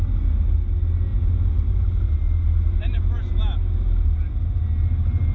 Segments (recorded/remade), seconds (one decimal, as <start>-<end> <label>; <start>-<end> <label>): 0.0-1.1 recorded; 1.1-3.3 remade; 3.3-5.3 recorded

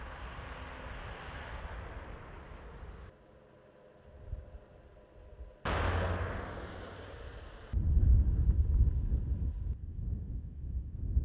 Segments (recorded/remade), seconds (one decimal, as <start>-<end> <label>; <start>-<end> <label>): 0.0-9.9 recorded; 9.9-11.2 remade

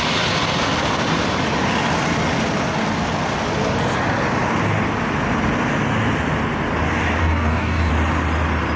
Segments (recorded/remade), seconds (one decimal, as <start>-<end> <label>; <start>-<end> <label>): 0.0-7.2 recorded; 7.2-7.9 remade; 7.9-8.8 recorded

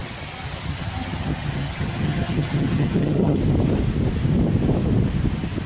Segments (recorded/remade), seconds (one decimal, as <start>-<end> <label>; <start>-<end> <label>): 0.0-3.4 remade; 3.4-5.7 recorded